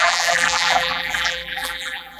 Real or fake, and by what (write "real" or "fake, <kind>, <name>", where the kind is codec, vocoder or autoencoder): fake, vocoder, BigVGAN v2